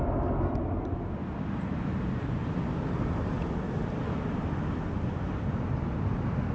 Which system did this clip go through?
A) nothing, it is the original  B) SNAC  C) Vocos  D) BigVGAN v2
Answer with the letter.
A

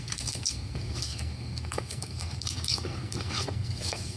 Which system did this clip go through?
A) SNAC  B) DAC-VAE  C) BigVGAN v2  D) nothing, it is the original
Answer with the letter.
A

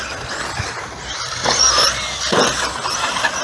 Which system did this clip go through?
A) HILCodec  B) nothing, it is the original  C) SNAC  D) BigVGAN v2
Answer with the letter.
B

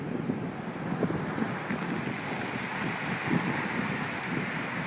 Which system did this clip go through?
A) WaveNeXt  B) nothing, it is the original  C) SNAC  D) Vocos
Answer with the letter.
B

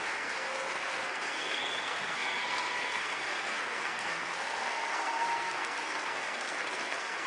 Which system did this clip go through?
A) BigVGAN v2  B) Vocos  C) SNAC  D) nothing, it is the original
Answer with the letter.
C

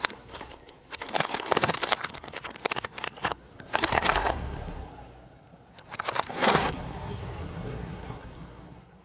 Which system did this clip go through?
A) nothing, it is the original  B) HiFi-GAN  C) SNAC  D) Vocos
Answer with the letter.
C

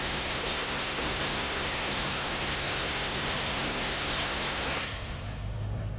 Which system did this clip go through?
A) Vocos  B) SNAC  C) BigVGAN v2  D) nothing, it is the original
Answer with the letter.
B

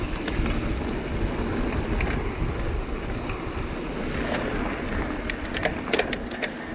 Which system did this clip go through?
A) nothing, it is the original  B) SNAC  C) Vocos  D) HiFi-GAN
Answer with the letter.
A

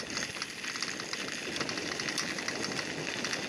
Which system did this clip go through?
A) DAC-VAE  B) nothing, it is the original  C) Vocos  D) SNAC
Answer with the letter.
B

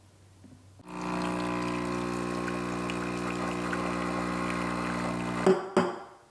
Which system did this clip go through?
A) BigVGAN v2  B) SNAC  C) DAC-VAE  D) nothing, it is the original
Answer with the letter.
D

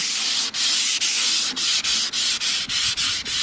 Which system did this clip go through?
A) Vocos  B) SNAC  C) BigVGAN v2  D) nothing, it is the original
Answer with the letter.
D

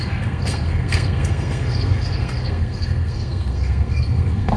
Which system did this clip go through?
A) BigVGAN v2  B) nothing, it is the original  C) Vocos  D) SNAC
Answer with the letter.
D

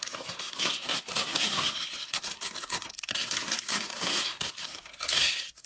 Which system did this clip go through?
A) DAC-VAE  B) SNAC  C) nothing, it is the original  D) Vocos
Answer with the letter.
B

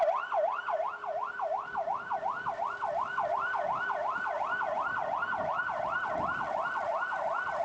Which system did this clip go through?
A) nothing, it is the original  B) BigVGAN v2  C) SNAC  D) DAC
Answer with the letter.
A